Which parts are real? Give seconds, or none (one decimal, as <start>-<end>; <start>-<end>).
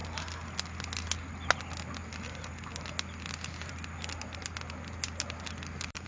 0.0-6.1